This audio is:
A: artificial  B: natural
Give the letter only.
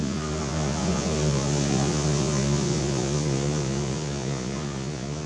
A